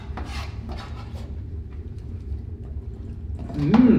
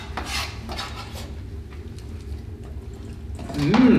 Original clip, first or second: second